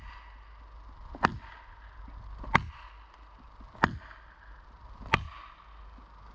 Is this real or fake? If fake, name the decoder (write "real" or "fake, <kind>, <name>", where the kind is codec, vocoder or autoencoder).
real